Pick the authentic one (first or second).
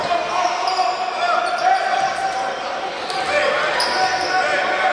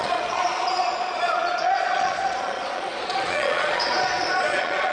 first